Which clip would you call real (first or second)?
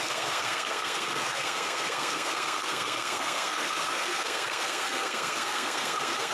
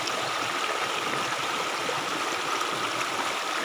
second